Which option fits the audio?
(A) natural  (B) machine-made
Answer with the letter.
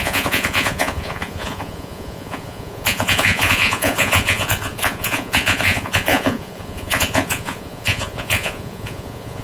B